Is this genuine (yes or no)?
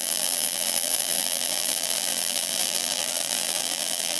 no